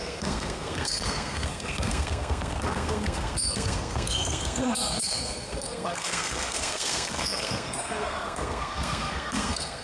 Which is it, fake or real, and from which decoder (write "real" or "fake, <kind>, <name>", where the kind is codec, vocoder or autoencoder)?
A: fake, codec, SNAC